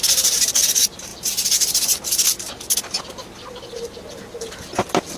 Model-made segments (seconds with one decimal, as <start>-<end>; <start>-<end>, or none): none